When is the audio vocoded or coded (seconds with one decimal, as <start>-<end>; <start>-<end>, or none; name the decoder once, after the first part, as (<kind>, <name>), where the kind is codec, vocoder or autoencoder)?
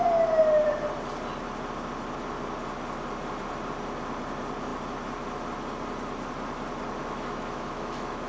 7.0-8.3 (autoencoder, DAC-VAE)